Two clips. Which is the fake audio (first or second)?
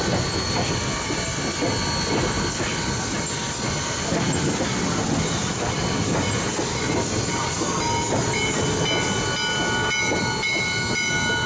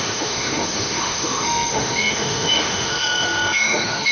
second